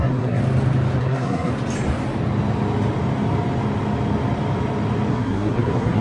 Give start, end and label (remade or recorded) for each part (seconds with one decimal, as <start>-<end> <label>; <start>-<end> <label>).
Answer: 0.0-0.4 remade; 0.4-1.0 recorded; 1.0-1.5 remade; 1.5-5.1 recorded; 5.1-6.0 remade